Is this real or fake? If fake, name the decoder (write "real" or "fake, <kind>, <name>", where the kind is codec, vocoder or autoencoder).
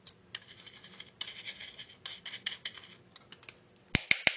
real